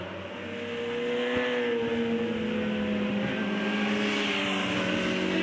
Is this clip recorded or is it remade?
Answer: recorded